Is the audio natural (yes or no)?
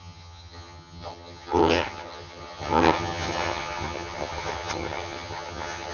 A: no